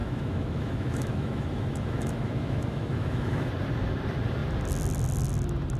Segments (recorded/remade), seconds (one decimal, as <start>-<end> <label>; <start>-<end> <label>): 0.0-3.5 remade; 3.5-5.8 recorded